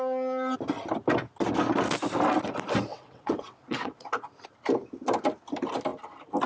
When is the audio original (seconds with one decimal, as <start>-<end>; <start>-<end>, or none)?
0.0-2.9; 4.1-6.5